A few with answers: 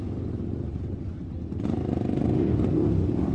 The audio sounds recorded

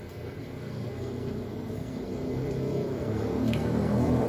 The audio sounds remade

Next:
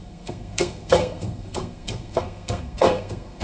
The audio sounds remade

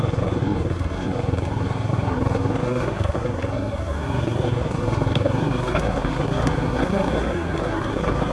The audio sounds remade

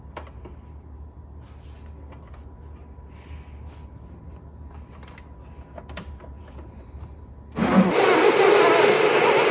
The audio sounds recorded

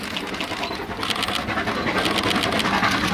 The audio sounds recorded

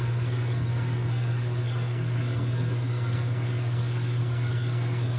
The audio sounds remade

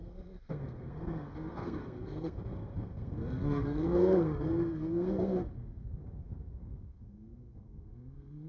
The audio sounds remade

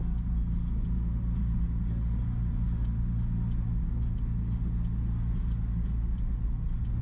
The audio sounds recorded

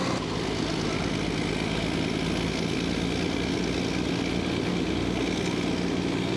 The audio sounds recorded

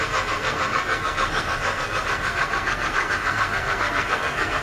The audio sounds remade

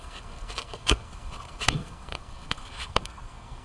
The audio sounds remade